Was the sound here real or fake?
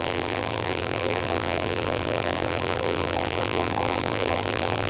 fake